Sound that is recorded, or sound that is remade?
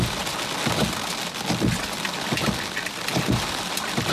recorded